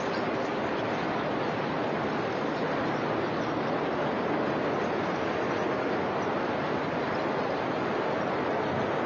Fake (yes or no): no